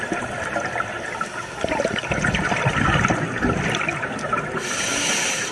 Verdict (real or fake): real